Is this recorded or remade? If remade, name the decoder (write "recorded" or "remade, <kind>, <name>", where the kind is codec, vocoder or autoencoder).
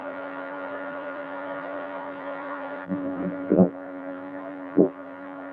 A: remade, vocoder, BigVGAN v2